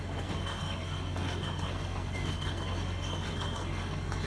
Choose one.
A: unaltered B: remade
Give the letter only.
B